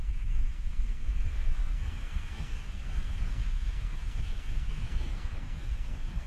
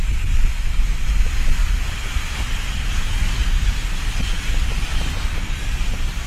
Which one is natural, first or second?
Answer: second